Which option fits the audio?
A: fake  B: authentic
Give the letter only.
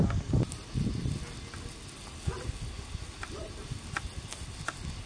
B